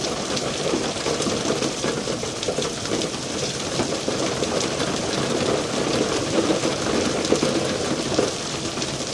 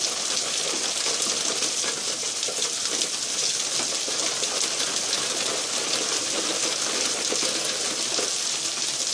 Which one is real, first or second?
second